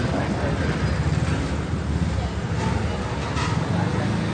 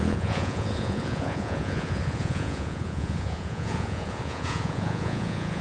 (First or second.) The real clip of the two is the first